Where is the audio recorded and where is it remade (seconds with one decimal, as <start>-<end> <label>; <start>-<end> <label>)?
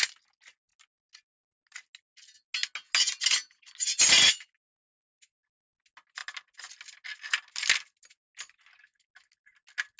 0.0-10.0 recorded